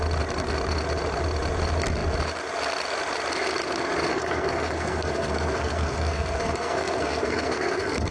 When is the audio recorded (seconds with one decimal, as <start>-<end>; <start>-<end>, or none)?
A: 0.0-4.1